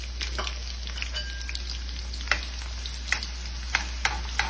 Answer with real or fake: real